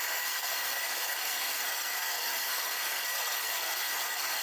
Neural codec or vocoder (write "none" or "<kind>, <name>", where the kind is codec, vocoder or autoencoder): codec, SNAC